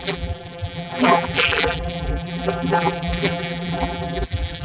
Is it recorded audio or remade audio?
remade